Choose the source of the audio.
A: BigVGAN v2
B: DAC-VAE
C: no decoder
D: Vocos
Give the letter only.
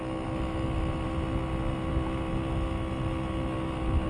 C